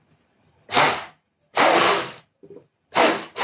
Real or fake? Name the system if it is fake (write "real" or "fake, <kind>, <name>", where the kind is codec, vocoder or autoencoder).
real